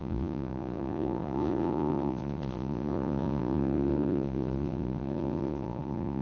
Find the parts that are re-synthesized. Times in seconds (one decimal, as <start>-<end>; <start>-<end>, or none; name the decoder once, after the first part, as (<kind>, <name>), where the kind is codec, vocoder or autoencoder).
0.0-6.2 (vocoder, Vocos)

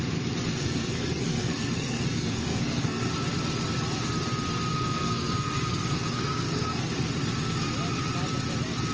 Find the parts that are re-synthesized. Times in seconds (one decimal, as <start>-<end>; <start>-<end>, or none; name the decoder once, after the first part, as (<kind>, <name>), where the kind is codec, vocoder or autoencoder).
0.5-3.1 (codec, SNAC); 4.7-6.9